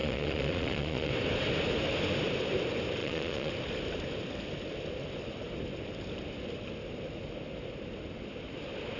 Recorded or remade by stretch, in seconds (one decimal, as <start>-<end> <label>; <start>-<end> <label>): 0.0-1.1 remade; 1.1-3.0 recorded; 3.0-3.5 remade; 3.5-9.0 recorded